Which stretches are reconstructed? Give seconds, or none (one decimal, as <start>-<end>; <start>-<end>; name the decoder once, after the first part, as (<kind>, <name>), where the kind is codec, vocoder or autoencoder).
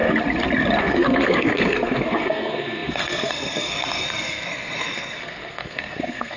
0.8-6.4 (codec, SNAC)